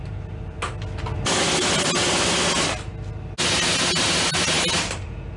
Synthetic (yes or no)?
no